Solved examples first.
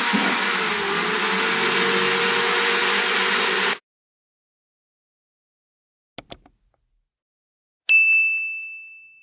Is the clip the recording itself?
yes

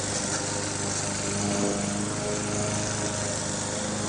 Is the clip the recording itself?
yes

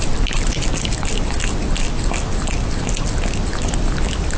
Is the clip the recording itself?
yes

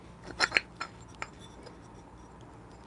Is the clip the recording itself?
yes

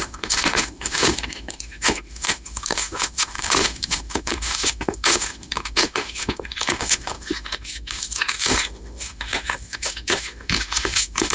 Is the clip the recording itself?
no